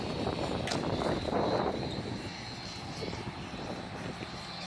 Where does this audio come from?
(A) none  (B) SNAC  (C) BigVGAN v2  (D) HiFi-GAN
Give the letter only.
A